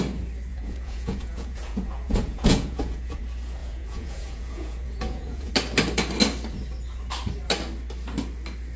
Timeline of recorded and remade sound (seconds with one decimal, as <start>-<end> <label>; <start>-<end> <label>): 0.0-0.5 recorded; 0.5-3.2 remade; 3.2-3.6 recorded; 3.6-5.5 remade; 5.5-8.8 recorded